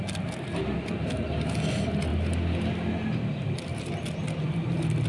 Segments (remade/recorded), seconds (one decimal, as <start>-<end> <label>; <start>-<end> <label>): 0.0-5.1 recorded